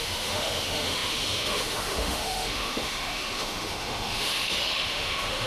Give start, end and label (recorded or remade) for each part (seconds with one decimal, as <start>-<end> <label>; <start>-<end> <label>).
0.0-5.5 remade